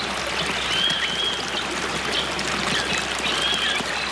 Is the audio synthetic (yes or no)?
no